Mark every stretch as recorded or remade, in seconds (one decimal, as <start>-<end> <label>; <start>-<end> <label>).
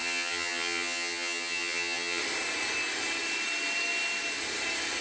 0.0-2.2 remade; 2.2-5.0 recorded